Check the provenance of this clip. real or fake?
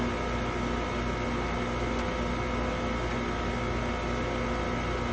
real